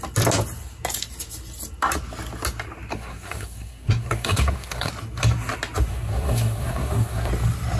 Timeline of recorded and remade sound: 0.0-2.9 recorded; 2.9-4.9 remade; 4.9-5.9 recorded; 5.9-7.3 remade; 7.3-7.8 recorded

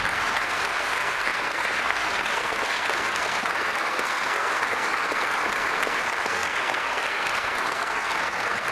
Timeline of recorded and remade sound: 0.0-8.7 remade